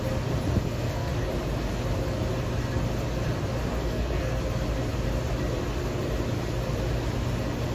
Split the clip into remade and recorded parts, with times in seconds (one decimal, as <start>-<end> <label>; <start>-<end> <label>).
0.0-0.6 recorded; 0.6-1.1 remade; 1.1-3.8 recorded; 3.8-4.4 remade; 4.4-7.7 recorded